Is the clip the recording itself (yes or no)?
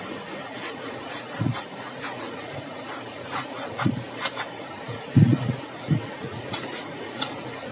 no